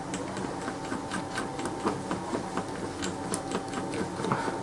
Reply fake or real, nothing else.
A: real